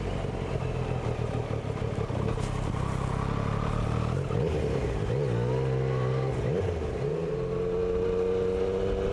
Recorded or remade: recorded